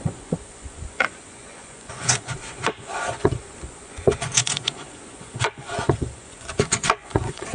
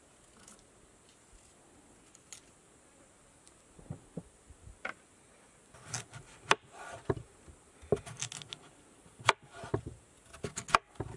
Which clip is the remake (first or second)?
first